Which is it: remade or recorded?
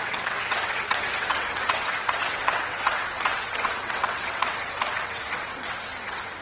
remade